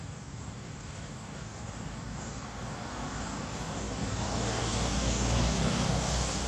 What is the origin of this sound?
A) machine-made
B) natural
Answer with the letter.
A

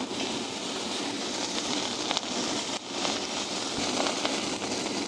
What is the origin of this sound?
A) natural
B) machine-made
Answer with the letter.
A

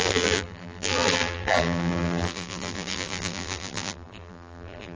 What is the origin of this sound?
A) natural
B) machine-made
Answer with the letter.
B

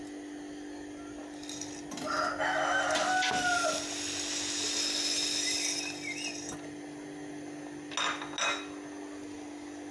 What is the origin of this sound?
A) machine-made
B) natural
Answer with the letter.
B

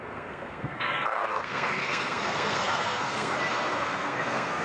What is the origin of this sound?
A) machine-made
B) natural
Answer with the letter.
A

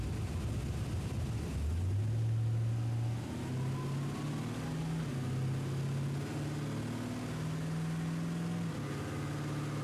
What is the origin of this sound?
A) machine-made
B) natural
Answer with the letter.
B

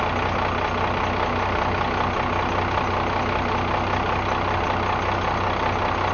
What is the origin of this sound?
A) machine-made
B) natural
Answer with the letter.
B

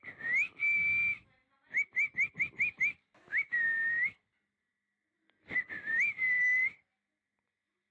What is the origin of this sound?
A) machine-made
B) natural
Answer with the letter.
B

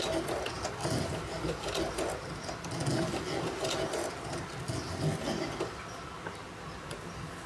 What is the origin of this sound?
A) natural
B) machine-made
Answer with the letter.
A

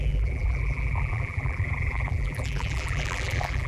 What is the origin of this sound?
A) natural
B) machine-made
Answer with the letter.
B